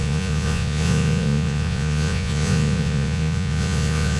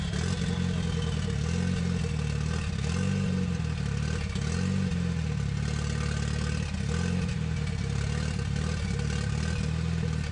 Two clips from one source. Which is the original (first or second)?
second